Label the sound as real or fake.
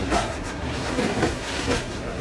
fake